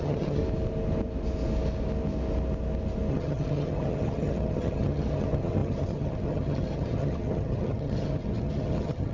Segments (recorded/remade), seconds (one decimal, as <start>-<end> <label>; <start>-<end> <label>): 0.0-0.4 remade; 0.4-3.1 recorded; 3.1-9.1 remade